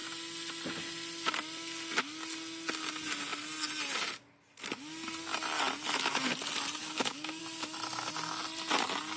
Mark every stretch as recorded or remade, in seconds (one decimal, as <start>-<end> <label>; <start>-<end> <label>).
0.0-6.8 recorded; 6.8-7.4 remade; 7.4-9.2 recorded